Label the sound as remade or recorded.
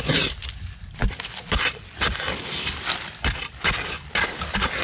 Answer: recorded